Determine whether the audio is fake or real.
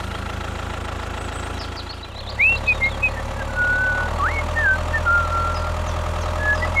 real